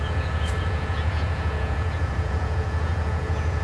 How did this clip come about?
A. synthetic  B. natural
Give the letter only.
A